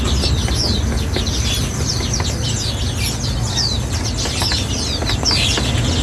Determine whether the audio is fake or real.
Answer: real